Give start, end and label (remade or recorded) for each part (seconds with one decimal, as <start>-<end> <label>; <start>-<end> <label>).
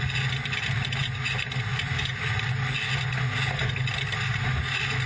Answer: 0.0-5.1 recorded